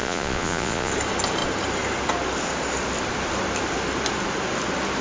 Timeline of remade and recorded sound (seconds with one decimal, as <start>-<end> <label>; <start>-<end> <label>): 0.0-0.9 remade; 0.9-5.0 recorded